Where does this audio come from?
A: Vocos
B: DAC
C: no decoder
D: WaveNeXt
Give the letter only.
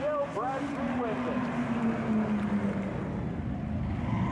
C